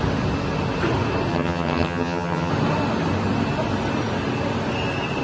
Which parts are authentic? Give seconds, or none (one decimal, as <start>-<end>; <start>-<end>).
0.0-1.3; 2.5-5.2

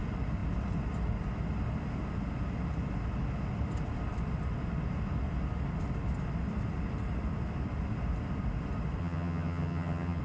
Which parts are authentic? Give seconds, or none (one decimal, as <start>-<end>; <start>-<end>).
0.0-9.0

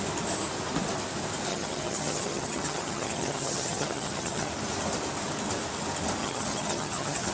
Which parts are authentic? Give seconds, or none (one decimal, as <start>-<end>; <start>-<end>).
0.0-1.5; 4.5-6.2

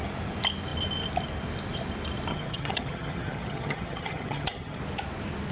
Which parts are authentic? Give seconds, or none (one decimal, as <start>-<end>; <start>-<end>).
0.0-2.3; 4.8-5.5

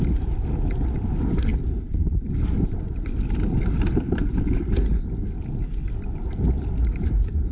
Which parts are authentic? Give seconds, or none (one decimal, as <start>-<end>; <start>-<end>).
0.0-7.5

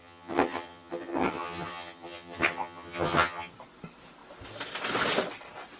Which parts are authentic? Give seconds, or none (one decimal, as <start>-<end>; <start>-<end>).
3.5-5.8

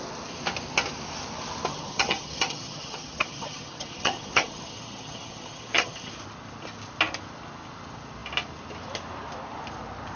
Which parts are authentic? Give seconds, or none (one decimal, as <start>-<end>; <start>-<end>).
0.0-1.7; 6.1-10.2